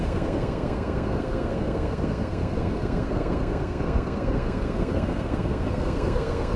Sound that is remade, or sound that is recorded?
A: remade